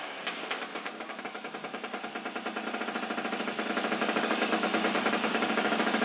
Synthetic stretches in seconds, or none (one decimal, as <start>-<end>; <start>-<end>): 0.0-2.1; 4.0-6.0